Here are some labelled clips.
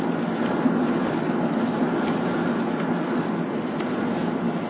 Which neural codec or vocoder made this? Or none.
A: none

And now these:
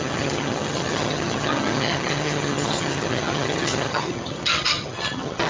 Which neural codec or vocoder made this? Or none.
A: vocoder, HiFi-GAN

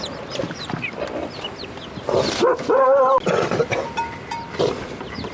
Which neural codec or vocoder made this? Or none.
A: none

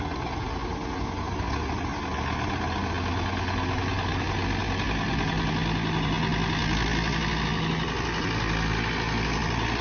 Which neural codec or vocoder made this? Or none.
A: none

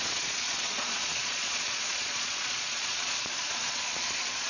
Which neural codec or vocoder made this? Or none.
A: vocoder, Vocos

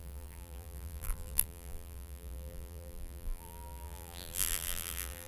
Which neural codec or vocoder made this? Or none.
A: vocoder, BigVGAN v2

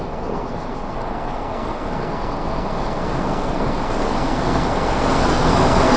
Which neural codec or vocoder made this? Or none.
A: codec, SNAC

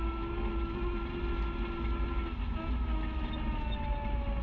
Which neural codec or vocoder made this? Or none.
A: none